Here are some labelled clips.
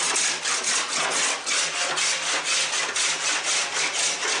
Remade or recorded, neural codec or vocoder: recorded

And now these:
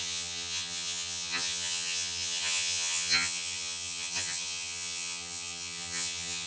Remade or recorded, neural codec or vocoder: remade, vocoder, HiFi-GAN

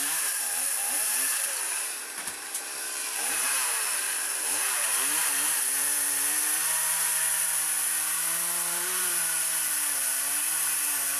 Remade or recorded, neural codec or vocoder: remade, vocoder, BigVGAN v2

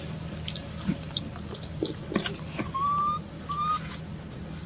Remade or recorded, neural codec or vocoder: recorded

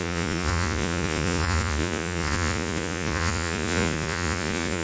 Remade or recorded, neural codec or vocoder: remade, vocoder, Vocos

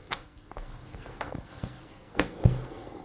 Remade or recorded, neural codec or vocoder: remade, codec, SNAC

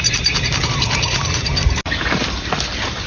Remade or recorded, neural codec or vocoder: recorded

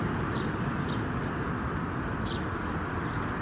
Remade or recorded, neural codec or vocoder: remade, vocoder, BigVGAN v2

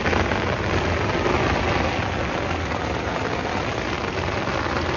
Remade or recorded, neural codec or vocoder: recorded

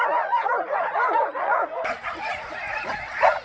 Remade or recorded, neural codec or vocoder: remade, vocoder, Vocos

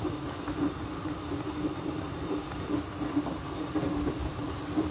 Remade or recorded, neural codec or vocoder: recorded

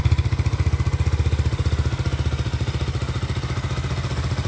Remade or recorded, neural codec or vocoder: recorded